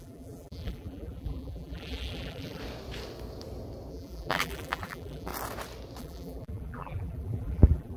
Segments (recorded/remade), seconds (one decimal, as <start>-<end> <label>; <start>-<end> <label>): 0.0-2.6 remade; 2.6-3.9 recorded; 3.9-5.3 remade; 5.3-6.0 recorded; 6.0-8.0 remade